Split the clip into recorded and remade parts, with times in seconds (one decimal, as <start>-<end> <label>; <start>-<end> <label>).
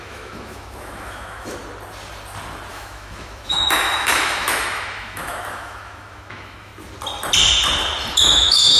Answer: 0.0-1.6 remade; 1.6-2.7 recorded; 2.7-6.7 remade; 6.7-8.1 recorded; 8.1-8.8 remade